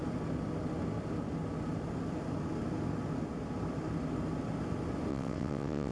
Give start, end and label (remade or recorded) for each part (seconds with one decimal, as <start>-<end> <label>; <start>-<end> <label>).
0.0-5.1 recorded; 5.1-5.9 remade